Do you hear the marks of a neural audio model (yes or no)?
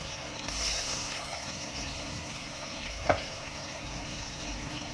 yes